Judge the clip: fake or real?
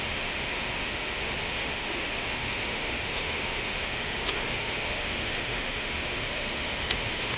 fake